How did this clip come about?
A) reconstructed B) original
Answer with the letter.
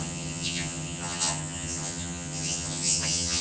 A